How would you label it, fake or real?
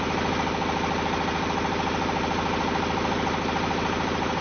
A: real